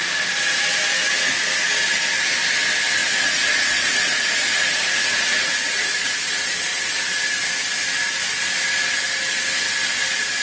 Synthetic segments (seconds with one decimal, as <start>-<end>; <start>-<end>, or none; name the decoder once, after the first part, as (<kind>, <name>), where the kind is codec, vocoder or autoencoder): 3.0-6.3 (vocoder, Vocos)